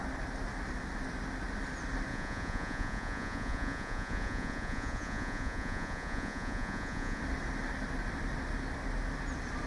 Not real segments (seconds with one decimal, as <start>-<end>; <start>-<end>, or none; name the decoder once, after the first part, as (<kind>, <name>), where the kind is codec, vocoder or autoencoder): 2.1-7.2 (vocoder, Vocos)